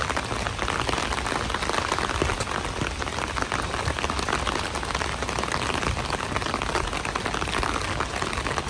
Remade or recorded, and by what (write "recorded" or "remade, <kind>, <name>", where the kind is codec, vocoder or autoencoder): recorded